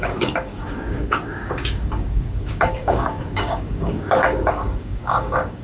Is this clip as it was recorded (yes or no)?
no